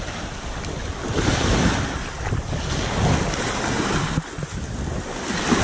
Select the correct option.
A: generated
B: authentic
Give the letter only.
B